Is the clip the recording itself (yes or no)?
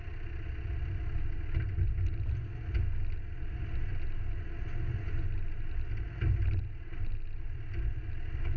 yes